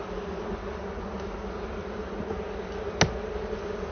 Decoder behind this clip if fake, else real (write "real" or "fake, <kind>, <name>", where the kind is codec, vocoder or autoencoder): real